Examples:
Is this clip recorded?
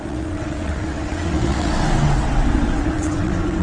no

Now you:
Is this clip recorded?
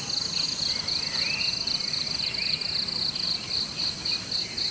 yes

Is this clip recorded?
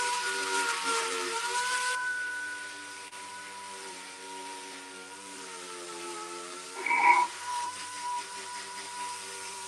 no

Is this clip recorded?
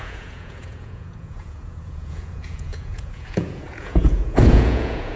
no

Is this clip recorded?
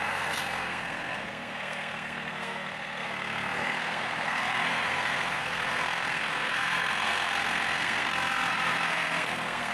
no